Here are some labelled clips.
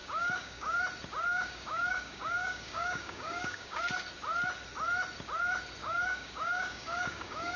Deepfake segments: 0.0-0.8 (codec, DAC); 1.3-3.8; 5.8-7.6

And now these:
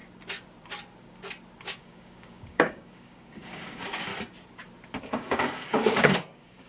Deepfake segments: 1.8-4.1 (codec, DAC); 5.0-6.7